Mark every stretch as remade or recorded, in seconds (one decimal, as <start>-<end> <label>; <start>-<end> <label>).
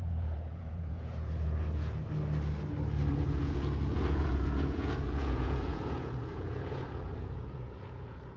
0.0-2.0 remade; 2.0-3.1 recorded; 3.1-8.4 remade